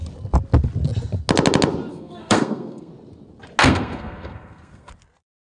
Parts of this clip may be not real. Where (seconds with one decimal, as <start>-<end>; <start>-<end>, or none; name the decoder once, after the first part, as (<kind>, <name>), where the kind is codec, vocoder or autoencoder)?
1.9-2.9 (codec, SNAC); 3.6-4.9